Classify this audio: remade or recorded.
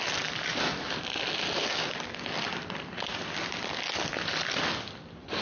recorded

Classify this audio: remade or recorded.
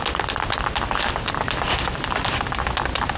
recorded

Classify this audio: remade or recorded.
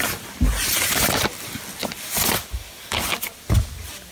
recorded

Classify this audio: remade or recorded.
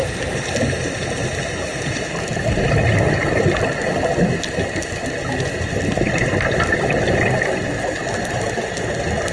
recorded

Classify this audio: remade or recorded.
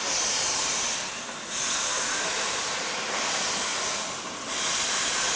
recorded